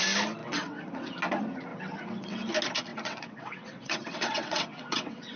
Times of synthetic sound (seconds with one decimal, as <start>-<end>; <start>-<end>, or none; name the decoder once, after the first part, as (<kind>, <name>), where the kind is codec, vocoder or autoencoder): 0.4-1.1 (vocoder, WaveNeXt); 1.7-2.5; 2.9-5.4